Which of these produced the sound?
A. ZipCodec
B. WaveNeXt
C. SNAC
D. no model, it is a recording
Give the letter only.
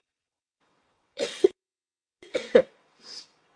B